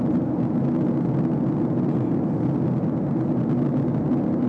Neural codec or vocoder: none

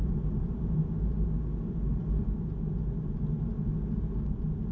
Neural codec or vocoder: none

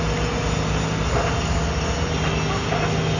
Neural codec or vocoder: none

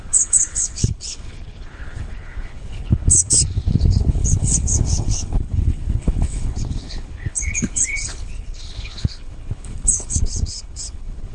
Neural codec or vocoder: codec, HILCodec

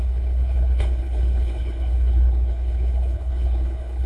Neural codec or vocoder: codec, HILCodec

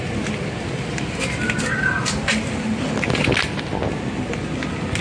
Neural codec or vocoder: none